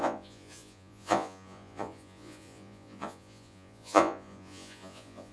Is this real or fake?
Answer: fake